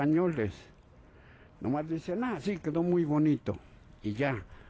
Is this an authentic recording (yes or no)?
no